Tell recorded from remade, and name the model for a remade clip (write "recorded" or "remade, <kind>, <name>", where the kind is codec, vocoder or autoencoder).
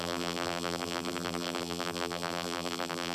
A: remade, vocoder, BigVGAN v2